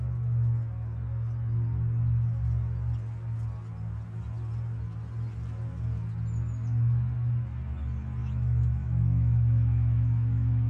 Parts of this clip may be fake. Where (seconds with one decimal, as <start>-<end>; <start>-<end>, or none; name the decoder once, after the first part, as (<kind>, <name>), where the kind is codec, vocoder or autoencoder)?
8.2-10.7 (autoencoder, DAC-VAE)